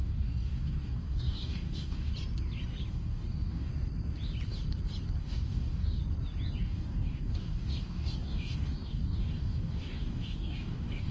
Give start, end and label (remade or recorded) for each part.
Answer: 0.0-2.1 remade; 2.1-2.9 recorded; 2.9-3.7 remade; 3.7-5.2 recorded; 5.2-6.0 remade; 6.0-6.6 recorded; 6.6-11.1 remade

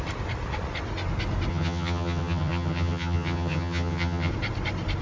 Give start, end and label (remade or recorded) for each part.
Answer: 0.0-1.5 recorded; 1.5-4.3 remade; 4.3-5.0 recorded